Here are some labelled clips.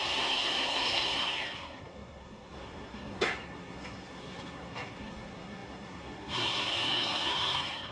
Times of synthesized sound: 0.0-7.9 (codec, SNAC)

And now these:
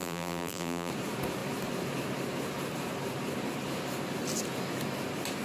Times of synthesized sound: 0.0-0.9 (vocoder, BigVGAN v2)

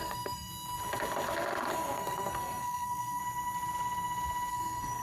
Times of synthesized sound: 0.0-0.5 (codec, SNAC); 1.7-3.2; 4.5-5.0

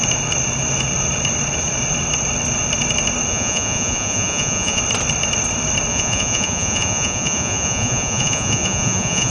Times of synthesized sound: 3.3-4.8 (vocoder, Vocos); 5.9-9.3

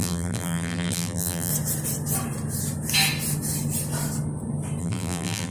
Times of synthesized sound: 0.0-1.5 (vocoder, BigVGAN v2); 4.8-5.5

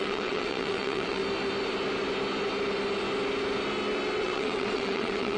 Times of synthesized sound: 0.0-1.2 (vocoder, WaveNeXt); 4.2-5.4

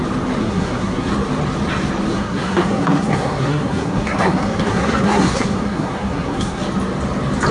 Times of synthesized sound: 0.4-1.1 (codec, SNAC); 2.1-6.6